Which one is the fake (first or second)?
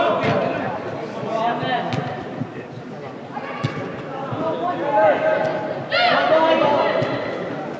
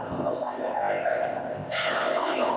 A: second